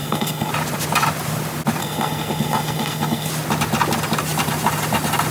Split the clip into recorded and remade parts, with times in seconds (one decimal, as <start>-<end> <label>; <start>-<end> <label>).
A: 0.0-0.5 remade; 0.5-1.8 recorded; 1.8-3.3 remade; 3.3-5.3 recorded

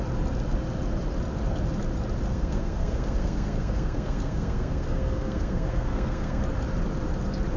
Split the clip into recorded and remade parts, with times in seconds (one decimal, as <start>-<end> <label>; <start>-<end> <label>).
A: 0.0-2.3 recorded; 2.3-6.4 remade; 6.4-7.6 recorded

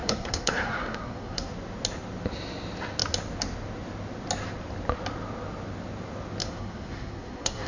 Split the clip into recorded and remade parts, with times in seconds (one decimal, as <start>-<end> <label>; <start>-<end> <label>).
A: 0.0-1.5 remade; 1.5-6.4 recorded; 6.4-7.7 remade

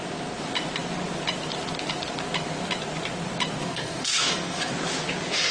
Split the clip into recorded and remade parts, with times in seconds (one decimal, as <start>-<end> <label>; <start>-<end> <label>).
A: 0.0-3.6 recorded; 3.6-4.7 remade; 4.7-5.5 recorded

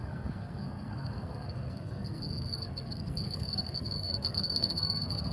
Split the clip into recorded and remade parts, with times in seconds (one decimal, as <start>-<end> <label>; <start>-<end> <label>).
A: 0.0-5.3 remade

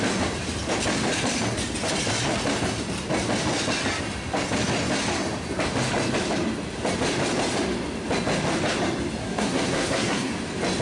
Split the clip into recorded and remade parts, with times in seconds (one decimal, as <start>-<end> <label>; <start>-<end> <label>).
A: 0.0-9.2 recorded; 9.2-10.3 remade; 10.3-10.8 recorded

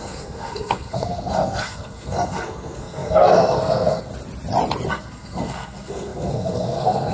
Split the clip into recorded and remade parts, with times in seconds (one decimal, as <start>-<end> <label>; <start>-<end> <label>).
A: 0.0-4.1 remade; 4.1-4.9 recorded; 4.9-7.1 remade

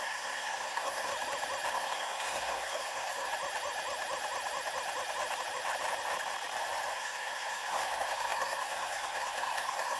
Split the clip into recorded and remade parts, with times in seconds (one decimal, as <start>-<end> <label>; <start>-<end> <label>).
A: 0.0-1.1 remade; 1.1-1.7 recorded; 1.7-3.3 remade; 3.3-6.9 recorded; 6.9-10.0 remade